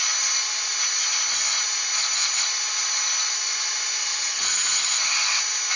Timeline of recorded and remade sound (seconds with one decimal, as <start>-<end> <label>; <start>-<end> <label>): 0.0-4.0 recorded; 4.0-4.9 remade; 4.9-5.8 recorded